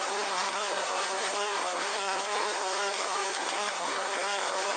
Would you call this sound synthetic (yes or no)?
yes